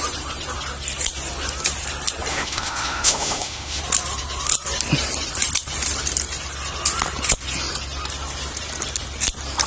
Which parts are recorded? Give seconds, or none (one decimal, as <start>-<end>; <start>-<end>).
0.0-2.3; 3.8-9.7